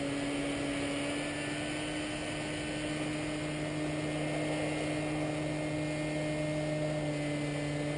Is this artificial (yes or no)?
no